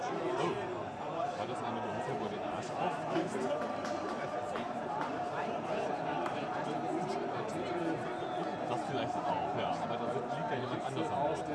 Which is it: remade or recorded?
remade